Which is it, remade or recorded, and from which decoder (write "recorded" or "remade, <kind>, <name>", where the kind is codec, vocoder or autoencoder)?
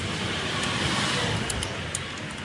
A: remade, vocoder, BigVGAN v2